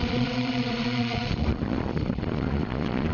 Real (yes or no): no